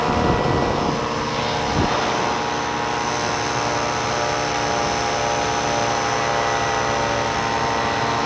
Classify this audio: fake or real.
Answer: real